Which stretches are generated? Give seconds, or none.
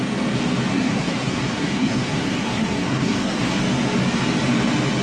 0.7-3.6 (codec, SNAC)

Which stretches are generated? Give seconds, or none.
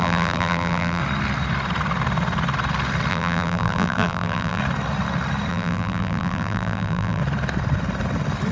0.0-1.0 (vocoder, BigVGAN v2); 3.1-4.6; 5.5-7.2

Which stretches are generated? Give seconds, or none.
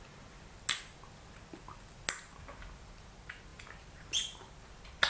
none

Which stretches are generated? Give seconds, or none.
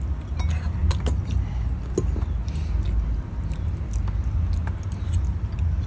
none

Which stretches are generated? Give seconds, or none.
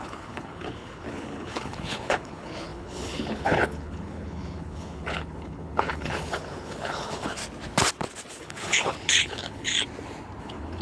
0.0-7.4 (codec, HILCodec); 8.4-9.7; 10.4-10.8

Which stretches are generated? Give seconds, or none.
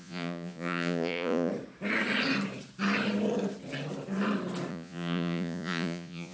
0.0-1.5 (vocoder, Vocos); 4.7-6.3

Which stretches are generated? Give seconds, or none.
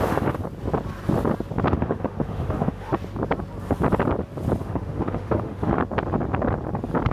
0.0-0.4 (autoencoder, DAC-VAE); 1.7-2.9; 4.6-5.8